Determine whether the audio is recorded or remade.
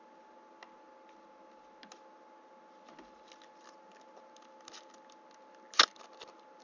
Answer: recorded